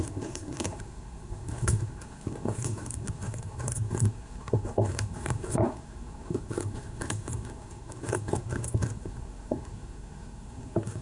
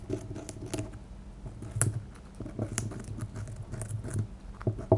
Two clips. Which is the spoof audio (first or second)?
first